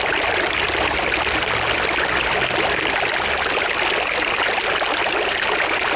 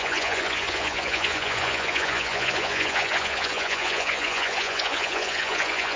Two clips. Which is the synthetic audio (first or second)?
second